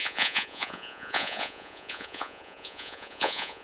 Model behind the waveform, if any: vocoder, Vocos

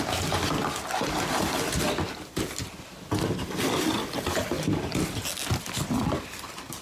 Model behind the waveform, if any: none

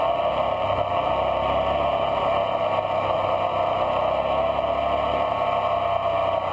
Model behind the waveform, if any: none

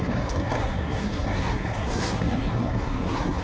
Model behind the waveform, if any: codec, SNAC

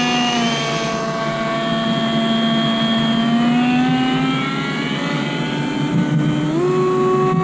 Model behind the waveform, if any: none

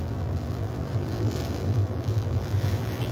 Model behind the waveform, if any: vocoder, BigVGAN v2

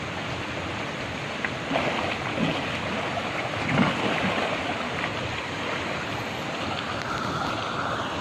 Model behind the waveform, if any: none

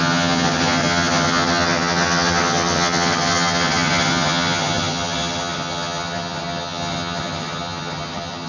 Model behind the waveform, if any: vocoder, HiFi-GAN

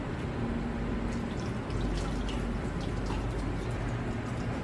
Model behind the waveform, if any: none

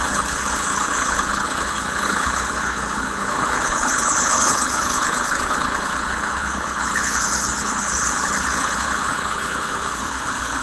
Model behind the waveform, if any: codec, HILCodec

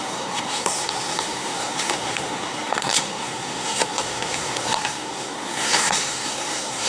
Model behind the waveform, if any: codec, SNAC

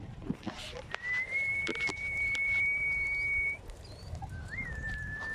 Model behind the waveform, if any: vocoder, BigVGAN v2